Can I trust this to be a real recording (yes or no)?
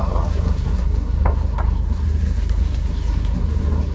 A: no